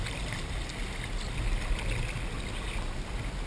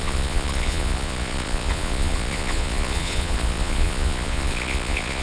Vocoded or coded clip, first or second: second